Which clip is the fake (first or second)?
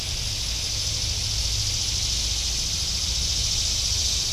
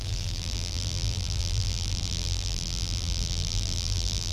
second